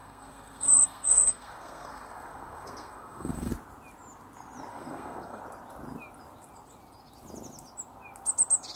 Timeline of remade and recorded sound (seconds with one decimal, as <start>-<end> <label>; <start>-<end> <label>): 0.0-3.5 remade; 3.5-4.7 recorded; 4.7-5.4 remade; 5.4-8.8 recorded